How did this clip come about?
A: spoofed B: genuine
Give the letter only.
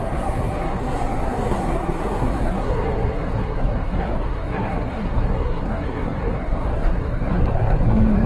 A